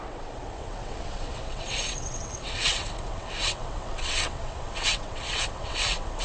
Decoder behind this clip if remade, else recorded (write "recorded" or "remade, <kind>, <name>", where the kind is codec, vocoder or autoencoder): remade, vocoder, WaveNeXt